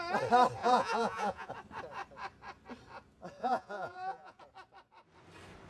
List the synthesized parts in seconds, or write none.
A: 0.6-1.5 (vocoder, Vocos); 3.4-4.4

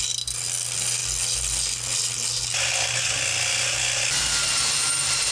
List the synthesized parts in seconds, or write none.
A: none

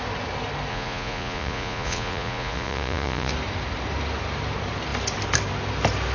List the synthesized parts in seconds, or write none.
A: 0.7-3.3 (vocoder, Vocos)

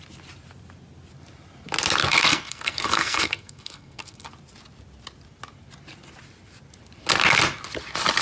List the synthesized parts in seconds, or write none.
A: 2.0-4.3 (codec, SNAC)

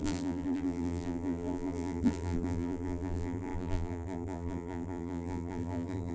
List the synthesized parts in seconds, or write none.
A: 0.0-6.1 (vocoder, BigVGAN v2)

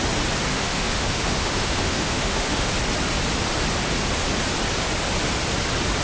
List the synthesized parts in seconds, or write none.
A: 0.5-2.7 (autoencoder, DAC-VAE)

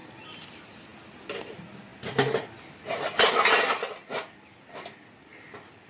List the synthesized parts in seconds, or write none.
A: none